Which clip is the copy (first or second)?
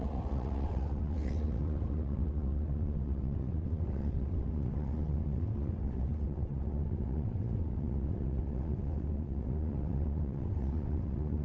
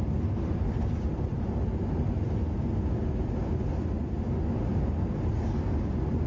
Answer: first